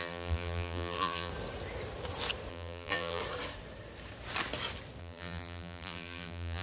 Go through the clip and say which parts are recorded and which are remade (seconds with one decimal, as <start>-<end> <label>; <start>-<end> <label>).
0.0-1.3 remade; 1.3-2.5 recorded; 2.5-3.2 remade; 3.2-5.0 recorded; 5.0-6.6 remade

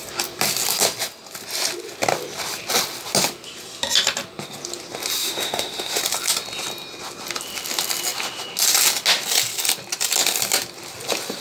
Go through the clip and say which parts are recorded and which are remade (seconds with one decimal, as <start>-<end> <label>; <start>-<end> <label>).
0.0-5.2 recorded; 5.2-6.0 remade; 6.0-11.4 recorded

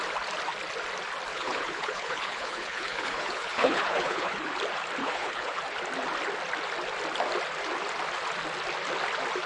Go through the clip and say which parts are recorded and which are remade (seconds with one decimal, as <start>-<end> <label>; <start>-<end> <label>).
0.0-1.3 recorded; 1.3-4.5 remade; 4.5-5.0 recorded; 5.0-5.6 remade; 5.6-9.5 recorded

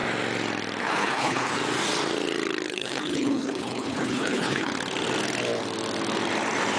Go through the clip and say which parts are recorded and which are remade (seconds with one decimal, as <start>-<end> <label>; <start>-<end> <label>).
0.0-0.8 recorded; 0.8-1.6 remade; 1.6-2.7 recorded; 2.7-4.7 remade; 4.7-6.8 recorded

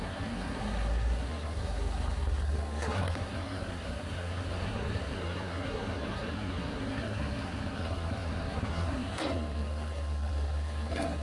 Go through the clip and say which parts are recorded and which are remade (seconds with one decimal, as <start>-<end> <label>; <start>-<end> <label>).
0.0-11.2 remade

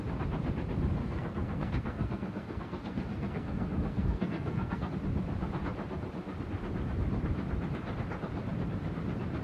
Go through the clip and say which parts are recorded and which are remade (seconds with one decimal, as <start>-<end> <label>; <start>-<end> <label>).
0.0-1.0 recorded; 1.0-4.9 remade; 4.9-9.4 recorded